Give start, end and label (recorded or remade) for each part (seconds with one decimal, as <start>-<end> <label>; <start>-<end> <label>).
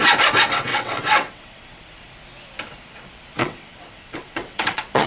0.0-0.7 recorded; 0.7-1.8 remade; 1.8-3.4 recorded; 3.4-5.1 remade